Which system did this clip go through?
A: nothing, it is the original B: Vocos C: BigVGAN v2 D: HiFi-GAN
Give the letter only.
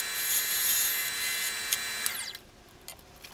A